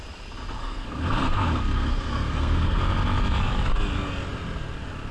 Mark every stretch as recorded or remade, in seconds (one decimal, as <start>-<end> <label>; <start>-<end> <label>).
0.0-0.6 recorded; 0.6-2.8 remade; 2.8-5.1 recorded